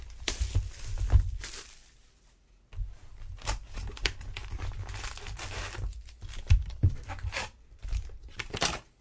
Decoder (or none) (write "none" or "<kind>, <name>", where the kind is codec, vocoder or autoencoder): none